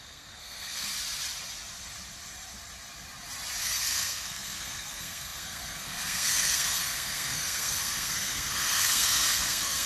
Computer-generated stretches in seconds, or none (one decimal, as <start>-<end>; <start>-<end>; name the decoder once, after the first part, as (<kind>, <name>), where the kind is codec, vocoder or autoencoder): 0.0-0.9 (codec, SNAC); 3.6-9.9

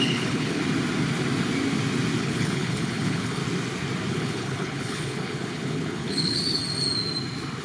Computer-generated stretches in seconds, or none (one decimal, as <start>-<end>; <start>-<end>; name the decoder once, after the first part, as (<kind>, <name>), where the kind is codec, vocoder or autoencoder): 0.0-0.6 (codec, HILCodec); 2.2-3.4; 4.1-6.6

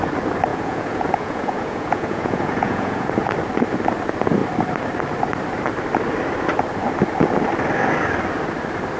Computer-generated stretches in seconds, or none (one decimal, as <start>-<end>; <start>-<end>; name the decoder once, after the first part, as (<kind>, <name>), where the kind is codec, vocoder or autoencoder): 0.5-3.1 (vocoder, Vocos)

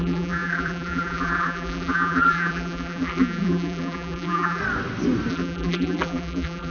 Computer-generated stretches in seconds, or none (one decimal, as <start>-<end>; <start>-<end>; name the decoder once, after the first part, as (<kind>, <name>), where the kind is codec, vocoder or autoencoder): 0.0-4.6 (vocoder, BigVGAN v2); 5.3-6.7

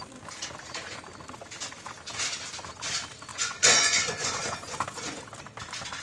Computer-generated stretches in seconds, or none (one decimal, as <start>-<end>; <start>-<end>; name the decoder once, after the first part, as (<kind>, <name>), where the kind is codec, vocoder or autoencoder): 3.3-5.2 (vocoder, Vocos)

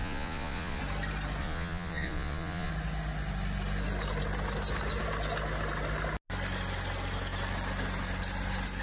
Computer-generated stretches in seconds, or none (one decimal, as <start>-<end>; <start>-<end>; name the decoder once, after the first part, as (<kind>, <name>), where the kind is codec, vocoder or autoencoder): 0.0-0.8 (vocoder, Vocos); 1.4-2.7